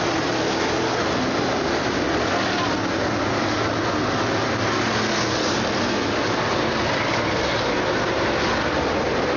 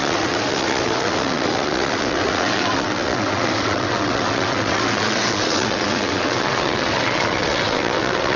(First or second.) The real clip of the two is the first